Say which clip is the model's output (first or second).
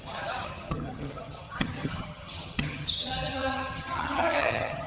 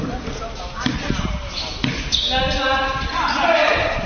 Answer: first